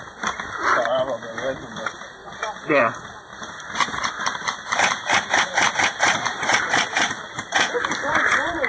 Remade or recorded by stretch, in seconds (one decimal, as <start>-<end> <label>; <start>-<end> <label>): 0.0-2.2 remade; 2.2-2.8 recorded; 2.8-8.7 remade